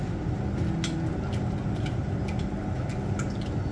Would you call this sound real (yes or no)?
yes